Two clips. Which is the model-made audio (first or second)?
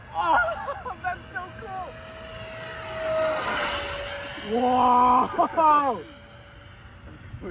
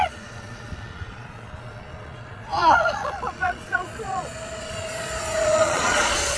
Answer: second